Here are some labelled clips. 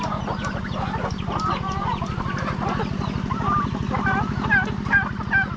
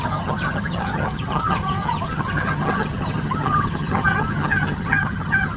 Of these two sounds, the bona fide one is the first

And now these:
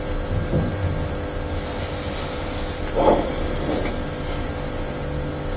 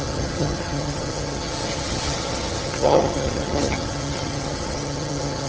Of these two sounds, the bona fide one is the first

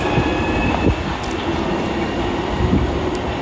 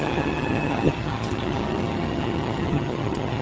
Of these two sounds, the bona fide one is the first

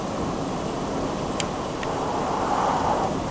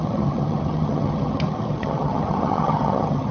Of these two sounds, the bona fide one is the first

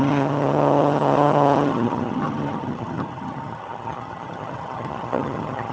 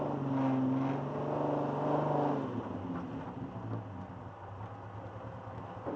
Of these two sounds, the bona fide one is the second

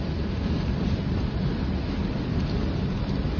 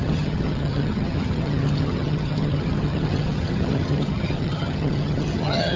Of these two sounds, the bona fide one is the first